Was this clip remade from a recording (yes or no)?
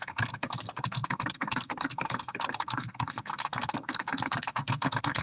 yes